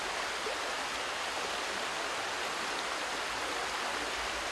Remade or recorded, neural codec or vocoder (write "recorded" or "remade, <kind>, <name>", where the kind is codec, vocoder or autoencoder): recorded